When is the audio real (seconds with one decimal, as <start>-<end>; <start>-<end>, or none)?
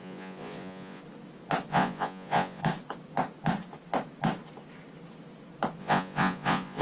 1.0-1.7; 2.6-5.8